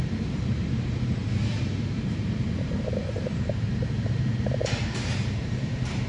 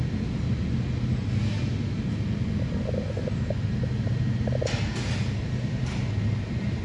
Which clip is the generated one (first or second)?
first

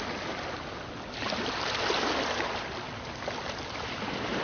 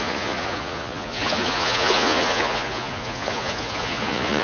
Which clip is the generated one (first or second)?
second